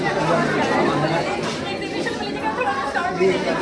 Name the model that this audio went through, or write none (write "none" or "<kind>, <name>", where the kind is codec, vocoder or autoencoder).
none